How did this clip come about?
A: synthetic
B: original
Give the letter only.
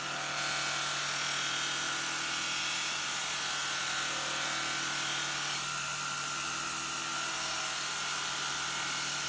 B